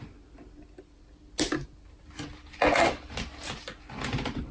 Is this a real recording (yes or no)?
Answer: yes